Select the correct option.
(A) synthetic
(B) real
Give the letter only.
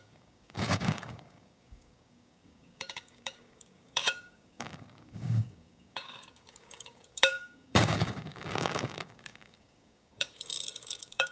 A